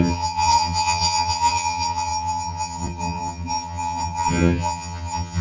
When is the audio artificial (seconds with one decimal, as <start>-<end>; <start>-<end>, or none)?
0.0-5.4